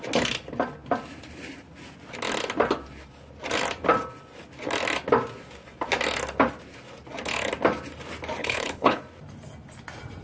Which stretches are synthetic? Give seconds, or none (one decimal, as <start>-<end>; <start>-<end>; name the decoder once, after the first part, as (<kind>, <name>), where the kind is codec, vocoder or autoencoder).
8.4-9.0 (codec, HILCodec)